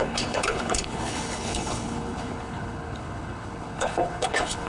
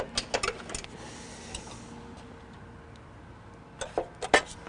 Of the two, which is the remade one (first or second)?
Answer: first